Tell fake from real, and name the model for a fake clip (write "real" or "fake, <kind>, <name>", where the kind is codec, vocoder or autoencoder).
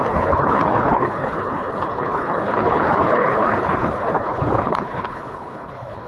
fake, codec, HILCodec